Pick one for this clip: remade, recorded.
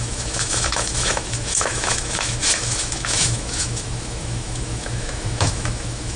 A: remade